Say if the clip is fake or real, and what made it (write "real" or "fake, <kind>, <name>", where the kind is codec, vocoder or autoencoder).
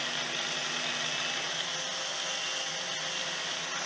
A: real